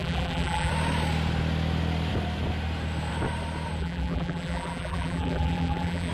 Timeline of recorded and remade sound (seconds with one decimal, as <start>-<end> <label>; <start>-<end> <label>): 0.0-0.7 remade; 0.7-3.8 recorded; 3.8-6.1 remade